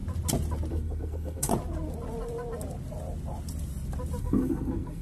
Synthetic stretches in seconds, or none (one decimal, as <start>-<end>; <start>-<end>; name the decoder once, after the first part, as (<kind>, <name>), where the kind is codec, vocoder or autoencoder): 0.7-1.5 (codec, SNAC); 4.2-5.0